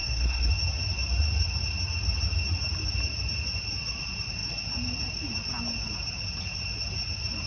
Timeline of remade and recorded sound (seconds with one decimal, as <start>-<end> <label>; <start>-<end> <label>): 0.0-0.5 remade; 0.5-7.5 recorded